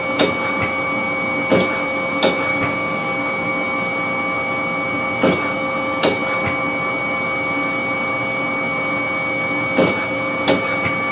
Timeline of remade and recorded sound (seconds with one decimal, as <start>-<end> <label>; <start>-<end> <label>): 0.0-2.5 recorded; 2.5-3.5 remade; 3.5-11.1 recorded